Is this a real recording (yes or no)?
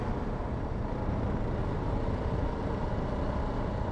yes